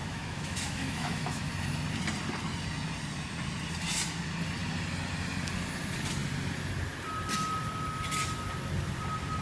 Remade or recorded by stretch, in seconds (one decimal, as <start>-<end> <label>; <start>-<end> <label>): 0.0-1.5 remade; 1.5-9.4 recorded